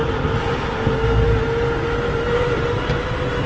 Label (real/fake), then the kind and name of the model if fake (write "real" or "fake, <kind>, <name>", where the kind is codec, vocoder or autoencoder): real